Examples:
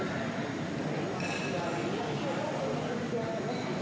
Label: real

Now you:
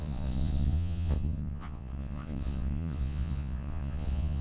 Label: fake